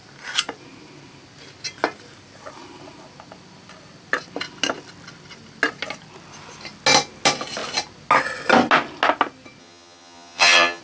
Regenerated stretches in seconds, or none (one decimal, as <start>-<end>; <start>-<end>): 9.6-10.8